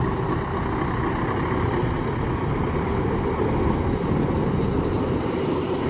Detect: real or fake real